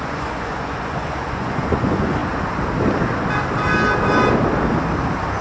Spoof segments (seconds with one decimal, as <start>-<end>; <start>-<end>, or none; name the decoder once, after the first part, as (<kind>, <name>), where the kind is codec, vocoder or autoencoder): 0.0-2.2 (vocoder, Vocos)